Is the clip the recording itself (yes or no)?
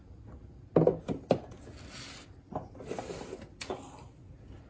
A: yes